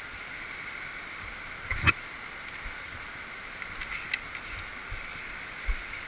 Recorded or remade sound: recorded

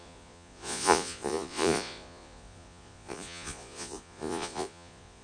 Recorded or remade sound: remade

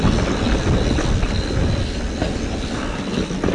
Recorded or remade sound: recorded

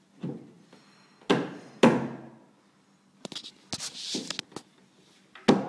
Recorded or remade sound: recorded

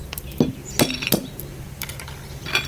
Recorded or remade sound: recorded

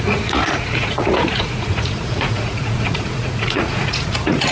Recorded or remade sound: remade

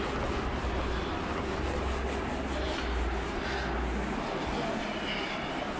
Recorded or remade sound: recorded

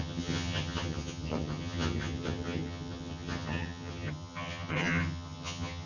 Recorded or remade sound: remade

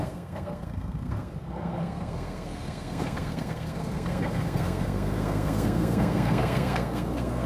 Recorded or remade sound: remade